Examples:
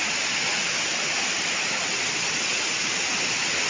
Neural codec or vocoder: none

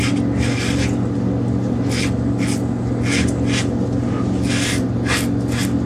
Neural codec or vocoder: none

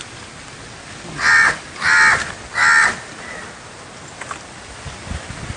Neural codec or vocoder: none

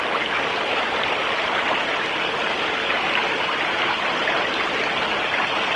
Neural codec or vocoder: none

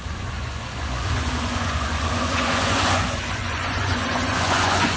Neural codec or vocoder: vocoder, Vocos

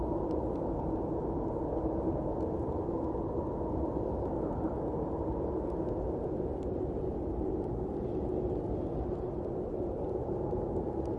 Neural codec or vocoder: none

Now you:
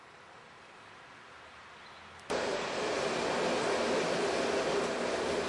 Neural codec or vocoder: none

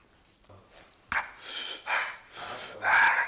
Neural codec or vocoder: none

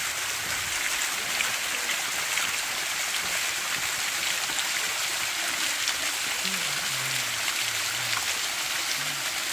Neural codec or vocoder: none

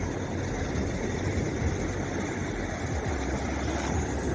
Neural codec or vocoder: none